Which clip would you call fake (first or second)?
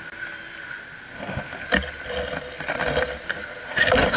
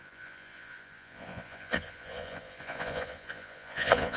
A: second